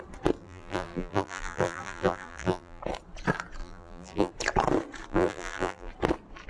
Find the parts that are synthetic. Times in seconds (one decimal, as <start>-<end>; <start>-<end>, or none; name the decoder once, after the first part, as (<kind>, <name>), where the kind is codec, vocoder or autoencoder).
0.4-2.8 (vocoder, BigVGAN v2); 3.6-4.3; 5.1-5.9